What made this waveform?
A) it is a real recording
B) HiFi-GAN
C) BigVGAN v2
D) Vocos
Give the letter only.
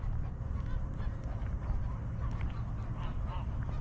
A